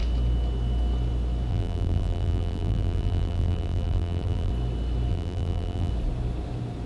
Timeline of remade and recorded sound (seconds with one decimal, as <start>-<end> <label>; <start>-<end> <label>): 0.0-1.5 recorded; 1.5-4.5 remade; 4.5-5.1 recorded; 5.1-5.9 remade; 5.9-6.9 recorded